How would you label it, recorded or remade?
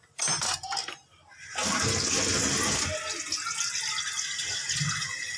recorded